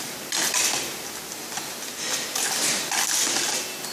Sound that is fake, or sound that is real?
real